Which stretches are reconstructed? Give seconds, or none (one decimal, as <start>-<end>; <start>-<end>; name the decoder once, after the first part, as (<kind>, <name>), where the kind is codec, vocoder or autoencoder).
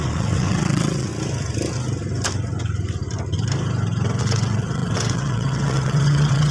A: 0.0-1.1 (vocoder, WaveNeXt); 4.2-6.5